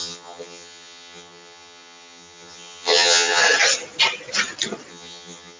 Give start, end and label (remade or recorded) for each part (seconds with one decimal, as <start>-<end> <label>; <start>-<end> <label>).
0.0-3.4 remade; 3.4-4.9 recorded; 4.9-5.6 remade